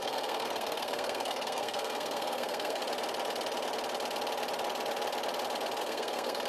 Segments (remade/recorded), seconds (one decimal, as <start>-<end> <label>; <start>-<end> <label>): 0.0-2.8 remade; 2.8-5.8 recorded; 5.8-6.5 remade